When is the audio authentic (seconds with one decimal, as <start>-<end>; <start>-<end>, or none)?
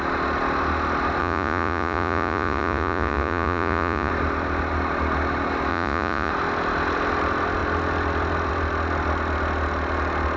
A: 0.0-1.2; 4.1-5.7; 6.3-10.4